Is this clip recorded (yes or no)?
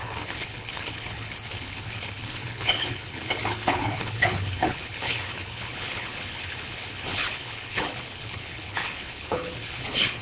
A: no